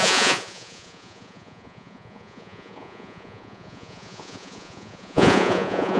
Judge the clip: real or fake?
fake